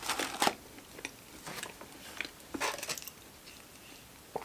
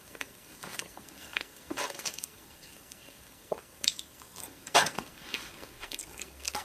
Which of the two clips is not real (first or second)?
second